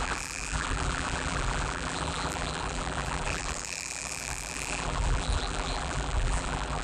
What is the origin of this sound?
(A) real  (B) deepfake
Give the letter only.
B